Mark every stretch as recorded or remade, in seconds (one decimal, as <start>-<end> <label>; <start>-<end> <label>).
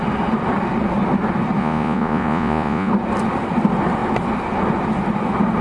0.0-1.6 recorded; 1.6-2.9 remade; 2.9-5.6 recorded